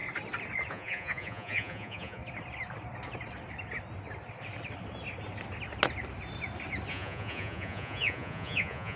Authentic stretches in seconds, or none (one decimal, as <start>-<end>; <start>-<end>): 0.0-0.7; 2.2-6.9